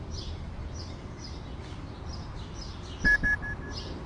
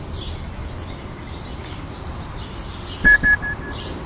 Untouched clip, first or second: first